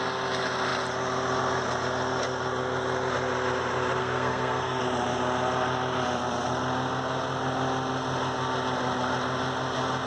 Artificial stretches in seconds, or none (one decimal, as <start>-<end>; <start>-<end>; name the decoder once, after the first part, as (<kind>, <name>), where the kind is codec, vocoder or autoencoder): 4.0-4.8 (codec, SNAC)

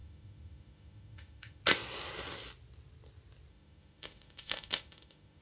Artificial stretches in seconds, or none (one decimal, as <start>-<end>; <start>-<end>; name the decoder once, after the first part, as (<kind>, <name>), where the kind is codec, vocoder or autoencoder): 0.0-1.6 (autoencoder, DAC-VAE); 3.5-5.4

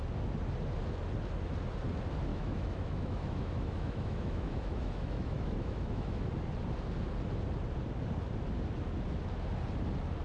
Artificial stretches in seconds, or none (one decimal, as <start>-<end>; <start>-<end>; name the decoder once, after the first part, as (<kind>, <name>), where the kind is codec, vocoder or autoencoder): 2.3-6.3 (autoencoder, DAC-VAE)

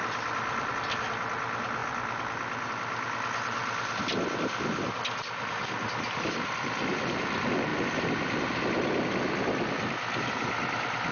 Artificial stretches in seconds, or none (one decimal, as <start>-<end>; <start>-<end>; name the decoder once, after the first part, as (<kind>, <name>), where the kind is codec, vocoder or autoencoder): 0.0-0.7 (vocoder, BigVGAN v2)

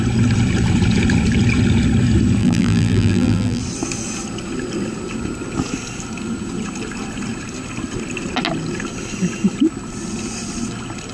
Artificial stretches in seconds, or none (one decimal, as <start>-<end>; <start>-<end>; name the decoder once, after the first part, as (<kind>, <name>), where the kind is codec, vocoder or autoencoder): 2.4-3.6 (vocoder, BigVGAN v2)

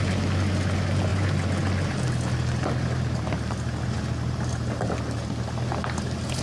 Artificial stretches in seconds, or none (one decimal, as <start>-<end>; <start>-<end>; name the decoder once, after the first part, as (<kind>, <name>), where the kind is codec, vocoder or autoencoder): none

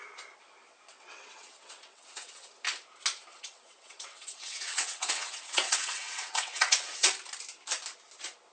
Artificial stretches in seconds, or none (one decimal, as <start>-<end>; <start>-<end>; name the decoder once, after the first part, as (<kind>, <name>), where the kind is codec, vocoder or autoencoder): 0.9-2.5 (vocoder, WaveNeXt); 3.3-7.1